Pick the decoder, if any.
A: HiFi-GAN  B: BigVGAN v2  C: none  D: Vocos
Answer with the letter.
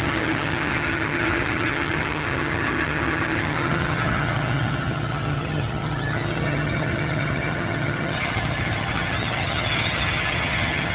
A